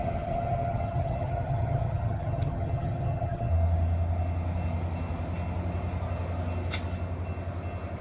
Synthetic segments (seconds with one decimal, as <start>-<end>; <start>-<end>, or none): 0.0-3.5